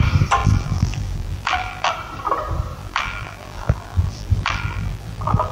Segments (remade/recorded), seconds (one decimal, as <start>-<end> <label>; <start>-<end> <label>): 0.0-0.4 recorded; 0.4-1.9 remade; 1.9-2.8 recorded; 2.8-5.5 remade